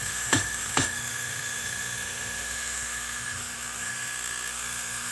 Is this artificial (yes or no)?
yes